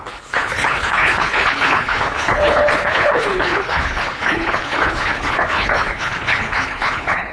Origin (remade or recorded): remade